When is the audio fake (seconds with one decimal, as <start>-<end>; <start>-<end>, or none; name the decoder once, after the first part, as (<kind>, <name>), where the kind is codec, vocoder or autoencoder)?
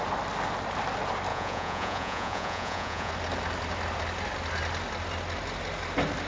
1.3-3.1 (vocoder, Vocos)